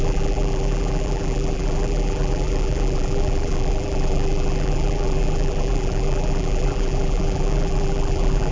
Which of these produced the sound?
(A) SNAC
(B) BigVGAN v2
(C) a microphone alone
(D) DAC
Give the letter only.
B